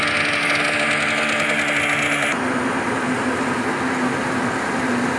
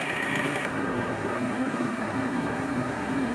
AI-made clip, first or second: second